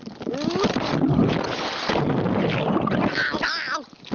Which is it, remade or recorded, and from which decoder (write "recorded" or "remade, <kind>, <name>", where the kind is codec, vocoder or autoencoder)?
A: recorded